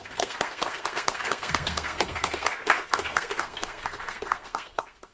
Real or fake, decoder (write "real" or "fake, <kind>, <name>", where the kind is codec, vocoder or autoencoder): fake, codec, SNAC